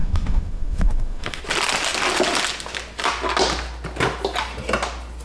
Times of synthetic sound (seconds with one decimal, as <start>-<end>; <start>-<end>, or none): 0.0-1.4